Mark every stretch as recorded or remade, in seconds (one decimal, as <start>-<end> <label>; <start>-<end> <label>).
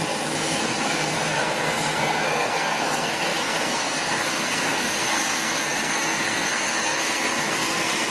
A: 0.0-8.1 remade